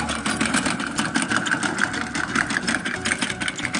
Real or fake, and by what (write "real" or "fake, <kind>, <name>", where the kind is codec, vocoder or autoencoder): real